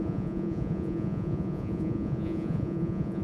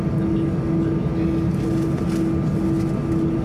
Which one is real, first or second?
second